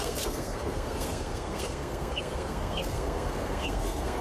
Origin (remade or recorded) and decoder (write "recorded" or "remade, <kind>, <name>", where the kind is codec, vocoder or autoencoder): remade, codec, SNAC